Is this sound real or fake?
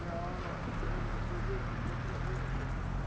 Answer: real